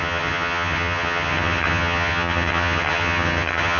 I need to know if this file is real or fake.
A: fake